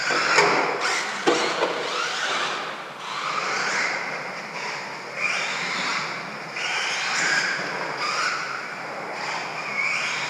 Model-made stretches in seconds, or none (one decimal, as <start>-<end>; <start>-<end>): none